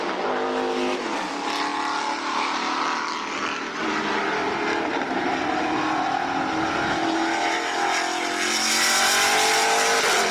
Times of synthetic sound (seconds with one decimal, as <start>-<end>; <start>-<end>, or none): none